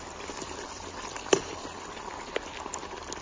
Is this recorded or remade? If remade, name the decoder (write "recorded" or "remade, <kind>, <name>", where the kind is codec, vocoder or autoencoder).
recorded